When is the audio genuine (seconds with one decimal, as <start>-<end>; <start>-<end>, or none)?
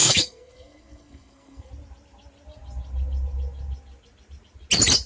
1.7-5.1